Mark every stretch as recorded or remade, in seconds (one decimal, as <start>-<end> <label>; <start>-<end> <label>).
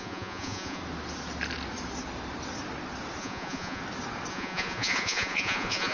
0.0-0.8 remade; 0.8-3.2 recorded; 3.2-3.8 remade; 3.8-4.3 recorded; 4.3-5.9 remade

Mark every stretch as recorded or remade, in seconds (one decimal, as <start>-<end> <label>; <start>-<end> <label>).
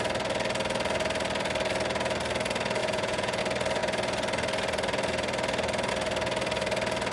0.0-2.8 recorded; 2.8-3.4 remade; 3.4-7.1 recorded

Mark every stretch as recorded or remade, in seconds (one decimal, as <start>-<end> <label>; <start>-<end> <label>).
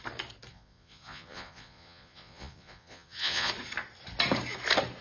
0.0-0.5 recorded; 0.5-3.5 remade; 3.5-5.0 recorded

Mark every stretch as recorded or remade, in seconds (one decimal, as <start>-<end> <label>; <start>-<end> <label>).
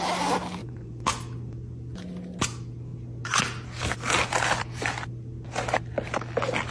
0.0-0.6 recorded; 0.6-1.1 remade; 1.1-6.7 recorded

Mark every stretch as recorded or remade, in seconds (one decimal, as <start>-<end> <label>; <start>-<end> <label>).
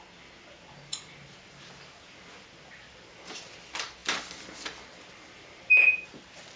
0.0-6.6 recorded